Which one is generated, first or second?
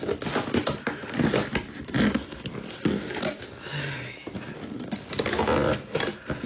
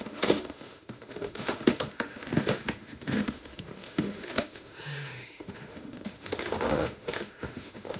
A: second